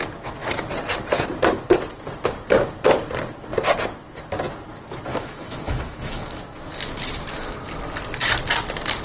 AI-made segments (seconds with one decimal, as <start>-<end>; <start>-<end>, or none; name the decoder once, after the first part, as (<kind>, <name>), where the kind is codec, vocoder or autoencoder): 5.1-6.4 (autoencoder, DAC-VAE)